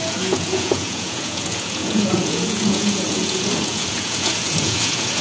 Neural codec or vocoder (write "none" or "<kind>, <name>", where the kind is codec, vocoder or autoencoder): vocoder, Vocos